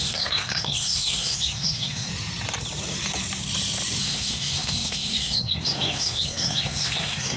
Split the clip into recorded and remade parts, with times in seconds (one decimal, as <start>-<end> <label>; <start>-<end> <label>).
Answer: 0.0-2.1 remade; 2.1-4.0 recorded; 4.0-7.4 remade

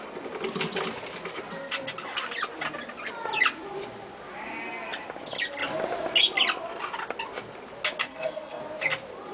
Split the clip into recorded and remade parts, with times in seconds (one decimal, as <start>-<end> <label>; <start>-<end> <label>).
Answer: 0.0-8.0 recorded; 8.0-8.6 remade; 8.6-9.3 recorded

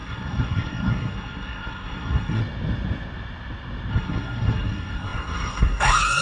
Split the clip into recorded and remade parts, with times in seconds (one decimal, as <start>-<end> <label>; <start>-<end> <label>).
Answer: 0.0-2.4 remade; 2.4-3.9 recorded; 3.9-6.2 remade

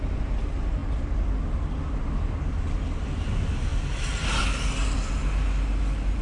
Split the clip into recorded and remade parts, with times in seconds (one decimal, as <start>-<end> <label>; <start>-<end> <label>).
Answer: 0.0-6.2 recorded

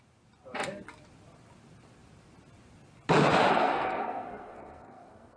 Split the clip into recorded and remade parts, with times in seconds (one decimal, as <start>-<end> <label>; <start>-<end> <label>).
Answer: 0.0-3.5 recorded; 3.5-5.4 remade

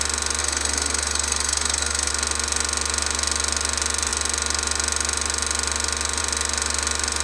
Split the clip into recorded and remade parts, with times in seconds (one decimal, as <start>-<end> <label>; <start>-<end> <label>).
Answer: 0.0-0.4 recorded; 0.4-2.1 remade; 2.1-7.2 recorded